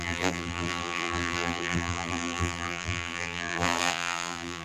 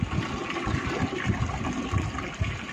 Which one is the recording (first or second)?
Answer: second